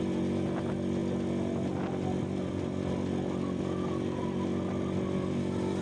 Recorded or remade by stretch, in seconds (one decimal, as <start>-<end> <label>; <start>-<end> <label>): 0.0-5.8 recorded